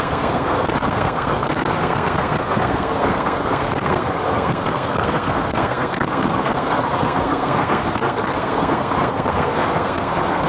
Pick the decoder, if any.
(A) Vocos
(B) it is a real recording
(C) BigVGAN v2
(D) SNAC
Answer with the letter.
D